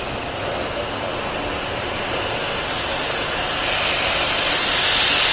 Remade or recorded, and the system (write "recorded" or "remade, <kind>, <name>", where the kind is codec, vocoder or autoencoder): recorded